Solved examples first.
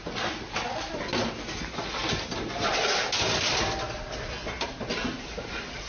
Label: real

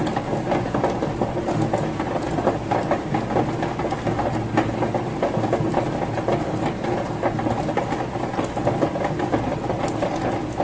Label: real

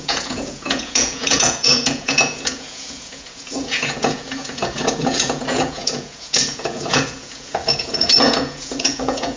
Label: fake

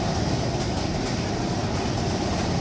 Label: real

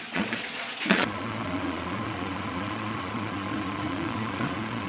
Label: fake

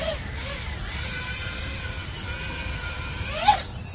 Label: real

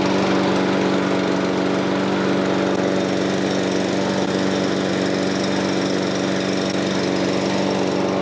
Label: real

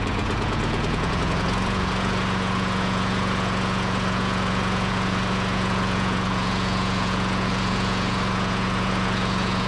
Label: fake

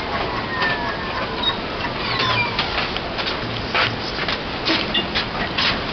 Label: real